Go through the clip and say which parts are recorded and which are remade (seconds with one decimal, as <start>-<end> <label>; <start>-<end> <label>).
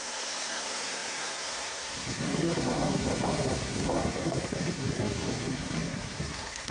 0.0-6.7 remade